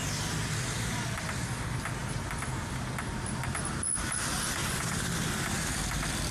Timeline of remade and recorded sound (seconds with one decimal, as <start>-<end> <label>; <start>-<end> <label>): 0.0-6.3 recorded